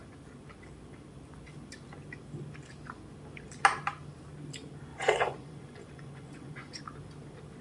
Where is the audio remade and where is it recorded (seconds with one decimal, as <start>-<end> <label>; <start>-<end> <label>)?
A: 0.0-4.9 recorded; 4.9-6.8 remade; 6.8-7.6 recorded